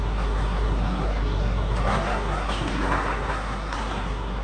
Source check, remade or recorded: remade